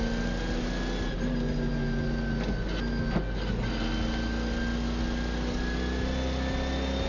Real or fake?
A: real